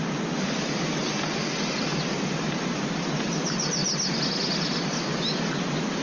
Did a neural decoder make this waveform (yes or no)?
no